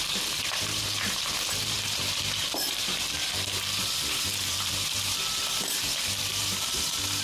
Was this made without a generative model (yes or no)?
no